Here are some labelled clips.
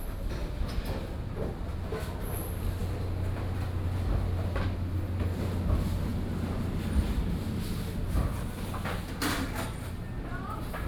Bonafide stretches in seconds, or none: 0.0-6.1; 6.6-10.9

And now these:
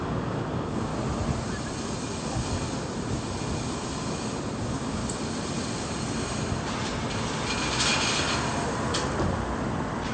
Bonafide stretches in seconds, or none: 0.9-4.6; 5.0-10.1

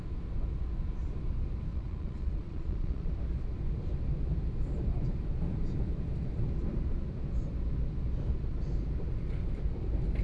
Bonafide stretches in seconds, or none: 0.0-1.7; 3.1-10.2

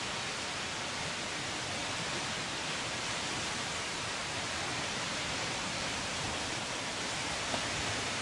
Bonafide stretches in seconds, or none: 0.0-1.8; 3.3-4.2; 6.9-8.2

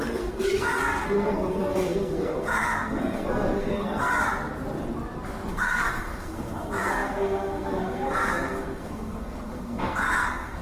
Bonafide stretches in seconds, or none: 4.1-5.5

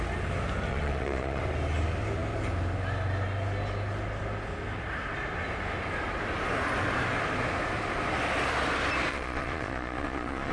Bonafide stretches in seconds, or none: 0.0-0.7; 1.4-9.1

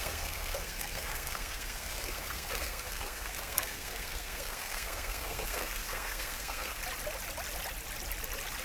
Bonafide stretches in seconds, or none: 6.8-8.6

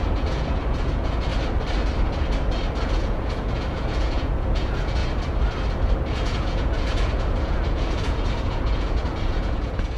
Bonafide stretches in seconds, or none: 1.3-2.8; 5.0-6.1